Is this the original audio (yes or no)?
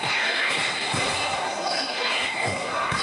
no